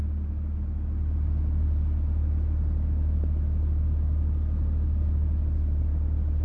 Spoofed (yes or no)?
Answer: no